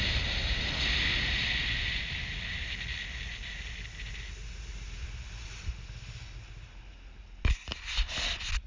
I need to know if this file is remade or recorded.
recorded